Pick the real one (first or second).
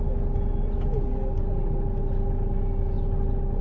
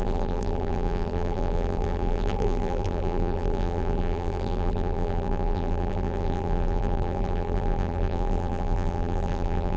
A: first